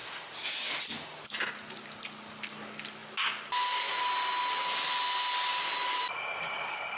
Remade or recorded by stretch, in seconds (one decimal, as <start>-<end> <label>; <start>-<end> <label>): 0.0-7.0 recorded